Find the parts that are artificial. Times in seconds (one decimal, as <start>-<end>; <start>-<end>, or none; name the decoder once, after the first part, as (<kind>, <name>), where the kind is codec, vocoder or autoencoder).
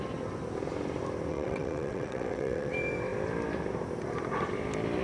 1.3-2.7 (vocoder, WaveNeXt)